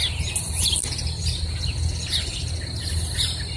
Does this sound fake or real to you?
real